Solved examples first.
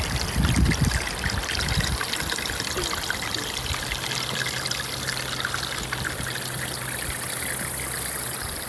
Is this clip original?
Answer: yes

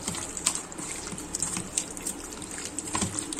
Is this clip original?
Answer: no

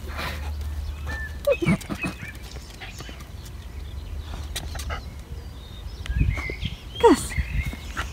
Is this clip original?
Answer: yes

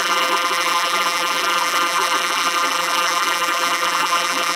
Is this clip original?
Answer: no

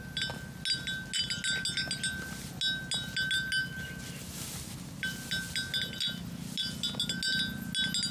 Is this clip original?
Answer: yes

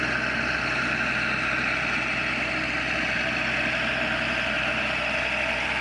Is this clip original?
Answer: yes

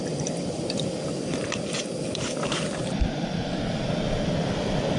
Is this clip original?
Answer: no